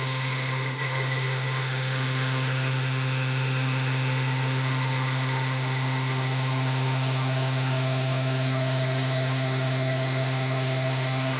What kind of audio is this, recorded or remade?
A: remade